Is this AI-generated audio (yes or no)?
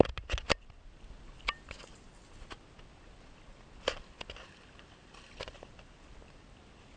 no